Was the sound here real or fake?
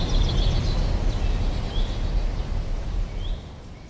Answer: real